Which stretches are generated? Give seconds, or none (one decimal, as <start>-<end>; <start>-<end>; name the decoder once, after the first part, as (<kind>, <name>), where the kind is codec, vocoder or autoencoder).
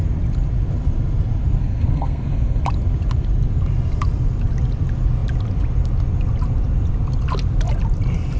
1.6-2.6 (codec, SNAC)